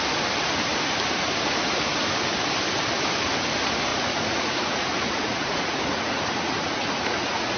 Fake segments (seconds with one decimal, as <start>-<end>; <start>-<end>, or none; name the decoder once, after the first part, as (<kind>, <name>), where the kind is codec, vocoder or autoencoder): 3.9-7.6 (vocoder, Vocos)